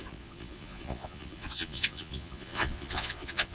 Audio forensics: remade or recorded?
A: remade